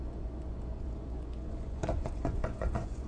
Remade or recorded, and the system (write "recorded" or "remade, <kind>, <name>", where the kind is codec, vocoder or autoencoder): remade, vocoder, Vocos